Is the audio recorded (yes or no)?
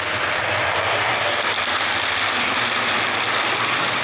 yes